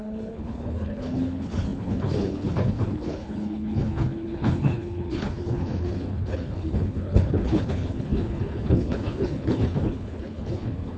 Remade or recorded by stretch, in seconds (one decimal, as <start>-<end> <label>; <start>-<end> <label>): 0.0-11.0 remade